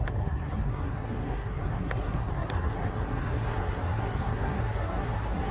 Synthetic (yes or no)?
yes